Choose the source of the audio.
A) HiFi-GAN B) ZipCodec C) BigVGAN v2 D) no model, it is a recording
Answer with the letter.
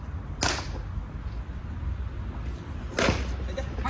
D